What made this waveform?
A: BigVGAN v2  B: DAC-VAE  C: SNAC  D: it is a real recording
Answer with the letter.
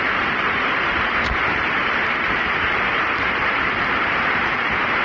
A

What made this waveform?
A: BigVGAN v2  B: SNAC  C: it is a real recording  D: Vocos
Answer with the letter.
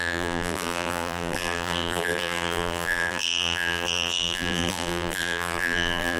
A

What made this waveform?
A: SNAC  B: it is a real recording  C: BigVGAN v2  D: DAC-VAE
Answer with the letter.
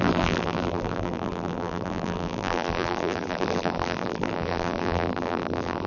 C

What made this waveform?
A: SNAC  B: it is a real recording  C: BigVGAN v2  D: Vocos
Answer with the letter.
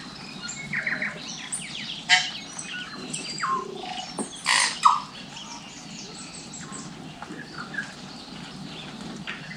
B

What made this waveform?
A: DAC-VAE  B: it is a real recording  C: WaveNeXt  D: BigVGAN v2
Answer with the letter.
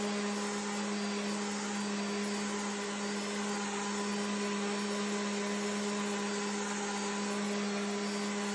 B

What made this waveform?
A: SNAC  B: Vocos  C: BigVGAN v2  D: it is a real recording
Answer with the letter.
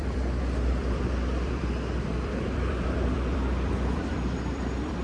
C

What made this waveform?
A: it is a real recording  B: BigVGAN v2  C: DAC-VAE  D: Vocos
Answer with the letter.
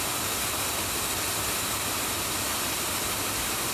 A